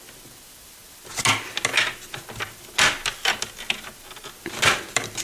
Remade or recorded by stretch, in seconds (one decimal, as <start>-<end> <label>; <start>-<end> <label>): 0.0-5.2 recorded